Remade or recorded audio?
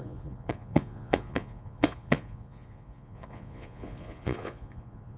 remade